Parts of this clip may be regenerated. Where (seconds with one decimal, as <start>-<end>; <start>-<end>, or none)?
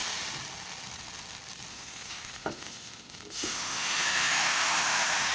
1.7-5.3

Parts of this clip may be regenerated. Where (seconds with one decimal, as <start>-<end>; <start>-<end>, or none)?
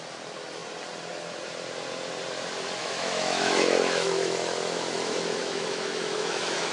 2.8-6.7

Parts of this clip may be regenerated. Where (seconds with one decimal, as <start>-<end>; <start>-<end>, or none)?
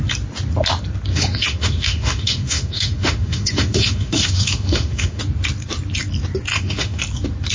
1.1-5.2; 6.5-7.0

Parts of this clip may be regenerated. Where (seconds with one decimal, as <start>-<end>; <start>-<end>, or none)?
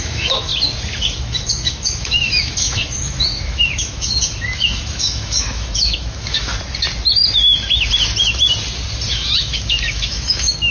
0.0-0.5; 1.2-6.5; 9.1-10.7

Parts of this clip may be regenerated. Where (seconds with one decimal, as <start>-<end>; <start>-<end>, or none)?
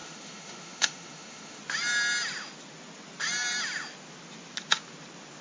0.0-1.6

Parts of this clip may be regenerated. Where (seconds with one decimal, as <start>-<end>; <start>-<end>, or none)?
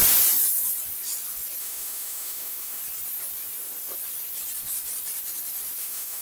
1.6-2.8; 5.8-6.2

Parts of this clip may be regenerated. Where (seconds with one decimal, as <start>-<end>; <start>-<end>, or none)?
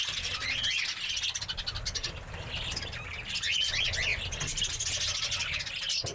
none